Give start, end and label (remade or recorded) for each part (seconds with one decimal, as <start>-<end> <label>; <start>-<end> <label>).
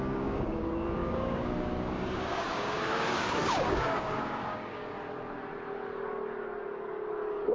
0.0-4.9 remade; 4.9-7.5 recorded